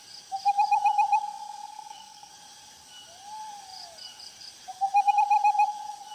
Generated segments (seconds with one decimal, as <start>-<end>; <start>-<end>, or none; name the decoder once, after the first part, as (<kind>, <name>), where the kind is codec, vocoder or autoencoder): 1.2-2.3 (codec, SNAC)